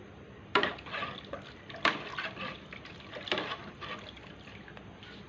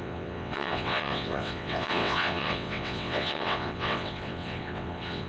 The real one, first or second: first